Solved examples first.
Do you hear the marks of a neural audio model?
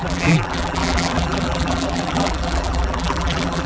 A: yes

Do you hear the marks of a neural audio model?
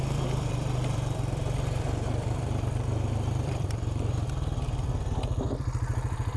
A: yes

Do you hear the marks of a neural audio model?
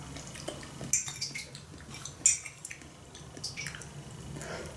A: no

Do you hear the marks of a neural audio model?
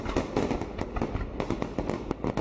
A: no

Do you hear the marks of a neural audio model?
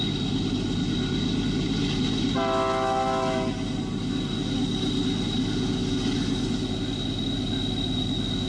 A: no